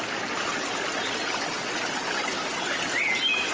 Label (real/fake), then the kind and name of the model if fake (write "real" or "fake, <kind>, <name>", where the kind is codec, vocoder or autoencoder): real